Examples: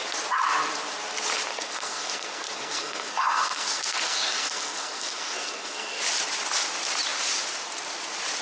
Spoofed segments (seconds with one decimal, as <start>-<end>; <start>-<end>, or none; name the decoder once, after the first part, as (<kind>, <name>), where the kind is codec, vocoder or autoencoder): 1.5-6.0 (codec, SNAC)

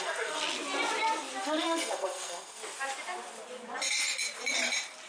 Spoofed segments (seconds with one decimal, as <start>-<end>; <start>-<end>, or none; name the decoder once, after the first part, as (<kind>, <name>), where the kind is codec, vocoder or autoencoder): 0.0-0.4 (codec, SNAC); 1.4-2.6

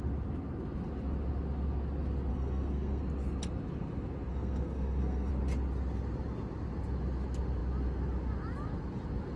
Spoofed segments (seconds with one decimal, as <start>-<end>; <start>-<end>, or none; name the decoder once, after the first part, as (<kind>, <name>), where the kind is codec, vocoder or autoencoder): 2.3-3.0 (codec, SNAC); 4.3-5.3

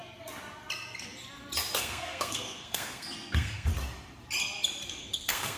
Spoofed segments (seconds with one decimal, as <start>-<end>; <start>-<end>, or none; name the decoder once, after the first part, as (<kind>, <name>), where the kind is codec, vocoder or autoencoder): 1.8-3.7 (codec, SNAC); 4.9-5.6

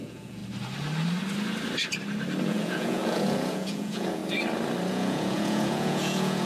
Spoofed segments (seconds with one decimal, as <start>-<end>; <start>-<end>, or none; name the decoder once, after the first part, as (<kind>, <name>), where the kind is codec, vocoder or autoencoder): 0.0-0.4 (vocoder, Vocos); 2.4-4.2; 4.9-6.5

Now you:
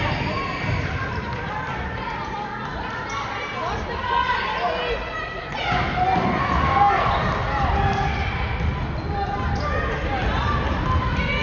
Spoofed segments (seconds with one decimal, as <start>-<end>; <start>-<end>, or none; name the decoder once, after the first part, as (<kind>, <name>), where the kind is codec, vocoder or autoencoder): 6.4-7.1 (codec, SNAC)